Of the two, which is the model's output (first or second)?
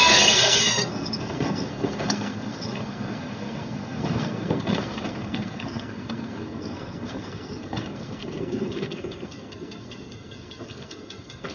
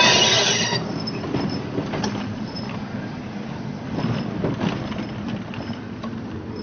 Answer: first